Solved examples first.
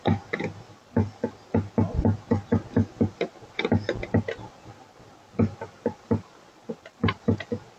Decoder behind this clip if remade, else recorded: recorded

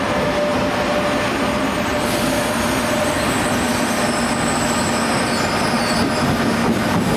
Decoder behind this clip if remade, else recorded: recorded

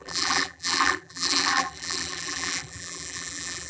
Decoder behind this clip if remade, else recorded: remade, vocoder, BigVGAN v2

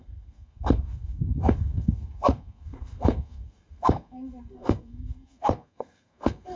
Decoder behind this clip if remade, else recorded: remade, codec, SNAC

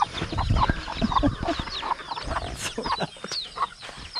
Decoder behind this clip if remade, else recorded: recorded